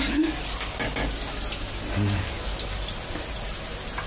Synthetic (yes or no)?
no